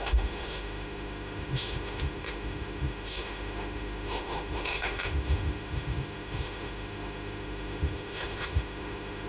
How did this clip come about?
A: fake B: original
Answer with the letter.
A